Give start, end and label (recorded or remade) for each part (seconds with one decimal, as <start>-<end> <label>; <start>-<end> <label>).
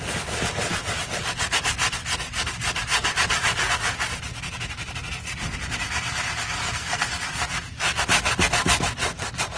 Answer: 0.0-6.6 recorded; 6.6-7.1 remade; 7.1-9.6 recorded